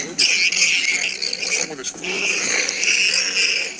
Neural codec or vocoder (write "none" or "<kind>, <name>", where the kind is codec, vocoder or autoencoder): none